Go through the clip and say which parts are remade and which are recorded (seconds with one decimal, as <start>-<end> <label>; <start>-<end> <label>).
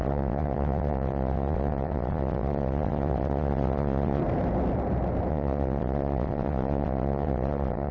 0.0-4.2 remade; 4.2-5.3 recorded; 5.3-7.9 remade